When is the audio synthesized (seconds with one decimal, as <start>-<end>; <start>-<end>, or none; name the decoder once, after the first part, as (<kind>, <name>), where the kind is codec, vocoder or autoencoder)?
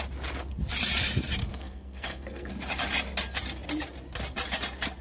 1.4-2.5 (codec, SNAC)